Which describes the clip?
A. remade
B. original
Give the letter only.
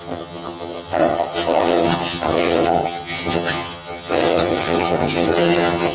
A